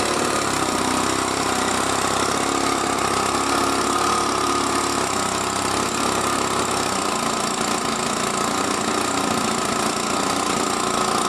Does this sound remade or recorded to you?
recorded